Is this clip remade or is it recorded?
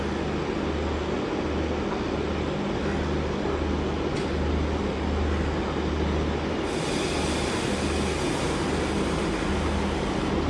recorded